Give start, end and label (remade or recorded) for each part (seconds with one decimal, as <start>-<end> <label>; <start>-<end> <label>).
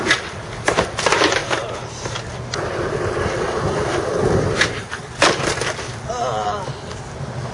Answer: 0.0-7.5 recorded